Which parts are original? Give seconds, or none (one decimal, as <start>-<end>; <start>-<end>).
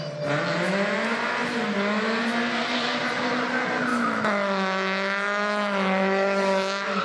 0.0-3.9